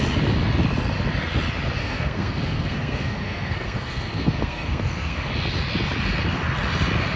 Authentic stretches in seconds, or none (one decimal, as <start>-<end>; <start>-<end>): 0.0-1.8; 5.3-7.2